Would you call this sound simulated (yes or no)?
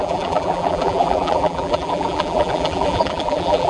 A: yes